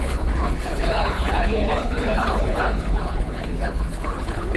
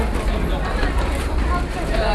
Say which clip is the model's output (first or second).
first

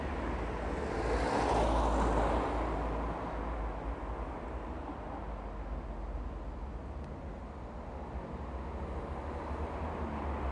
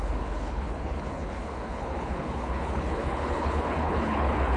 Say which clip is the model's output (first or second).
second